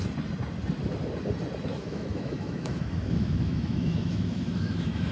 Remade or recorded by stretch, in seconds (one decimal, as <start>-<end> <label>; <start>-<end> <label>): 0.0-1.7 recorded; 1.7-5.1 remade